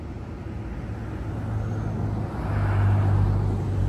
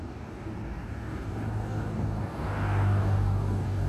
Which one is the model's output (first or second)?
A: second